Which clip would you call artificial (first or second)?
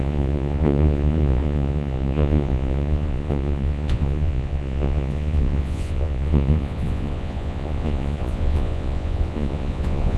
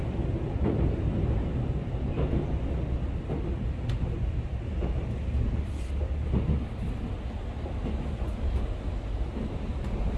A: first